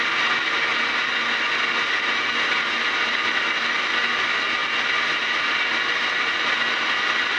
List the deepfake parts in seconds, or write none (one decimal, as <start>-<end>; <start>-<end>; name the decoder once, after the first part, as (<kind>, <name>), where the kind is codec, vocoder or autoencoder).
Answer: none